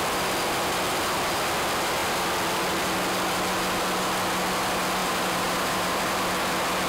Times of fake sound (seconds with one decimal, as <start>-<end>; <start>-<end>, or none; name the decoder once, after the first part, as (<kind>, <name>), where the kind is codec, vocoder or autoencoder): 5.0-6.2 (vocoder, BigVGAN v2)